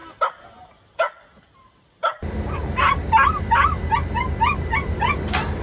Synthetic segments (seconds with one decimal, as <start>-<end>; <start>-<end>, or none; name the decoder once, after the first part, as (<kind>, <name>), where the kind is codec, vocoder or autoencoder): none